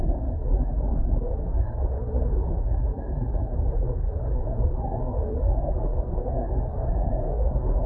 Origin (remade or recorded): remade